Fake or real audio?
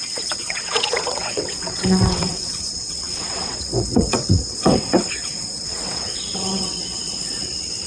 fake